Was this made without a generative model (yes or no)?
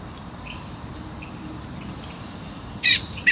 no